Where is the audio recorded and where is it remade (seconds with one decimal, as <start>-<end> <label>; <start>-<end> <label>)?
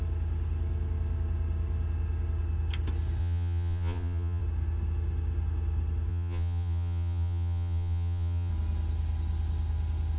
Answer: 0.0-3.2 recorded; 3.2-4.4 remade; 4.4-6.1 recorded; 6.1-8.5 remade; 8.5-10.2 recorded